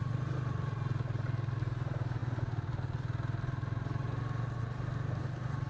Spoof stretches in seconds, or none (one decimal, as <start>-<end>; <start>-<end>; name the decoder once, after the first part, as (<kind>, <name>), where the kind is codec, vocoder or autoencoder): none